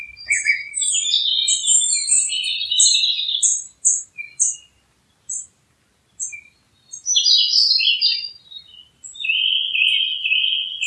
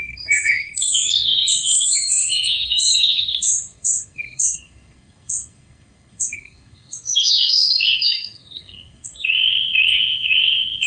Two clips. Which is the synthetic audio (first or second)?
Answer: second